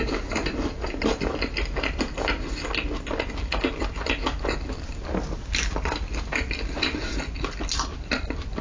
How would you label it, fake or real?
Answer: real